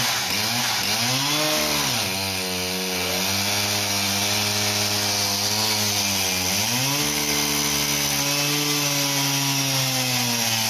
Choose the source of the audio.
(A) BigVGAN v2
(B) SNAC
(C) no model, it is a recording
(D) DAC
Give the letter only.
C